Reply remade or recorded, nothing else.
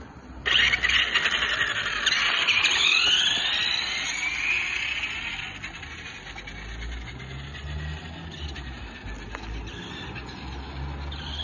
recorded